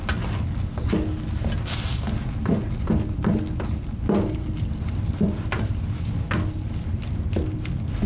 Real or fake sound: real